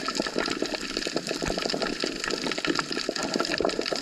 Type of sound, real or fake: real